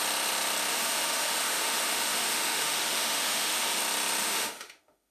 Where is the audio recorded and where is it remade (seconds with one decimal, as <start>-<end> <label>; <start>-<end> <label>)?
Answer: 0.0-0.7 recorded; 0.7-3.8 remade; 3.8-4.2 recorded; 4.2-5.1 remade